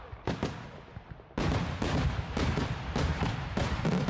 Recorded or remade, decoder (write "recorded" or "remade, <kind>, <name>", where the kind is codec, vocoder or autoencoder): recorded